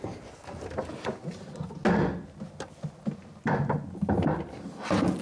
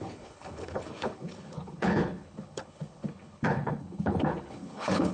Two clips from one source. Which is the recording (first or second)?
first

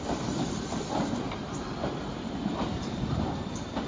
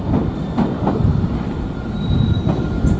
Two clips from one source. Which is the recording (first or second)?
second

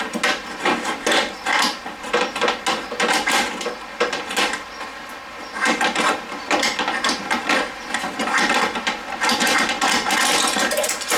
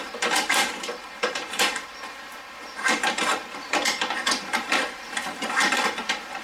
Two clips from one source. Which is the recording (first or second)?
first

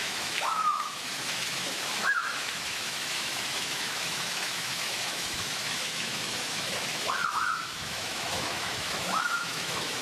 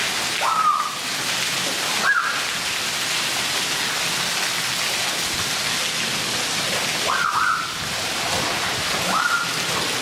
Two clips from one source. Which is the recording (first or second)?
second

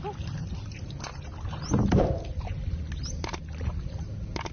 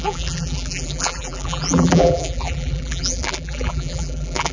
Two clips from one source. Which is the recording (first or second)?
first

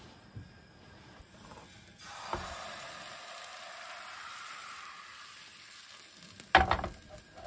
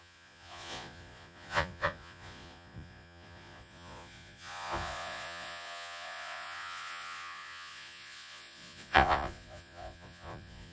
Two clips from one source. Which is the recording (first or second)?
first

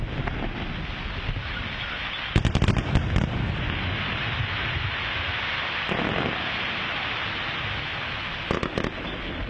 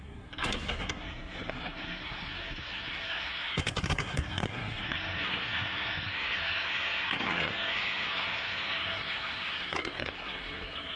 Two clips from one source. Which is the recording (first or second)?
first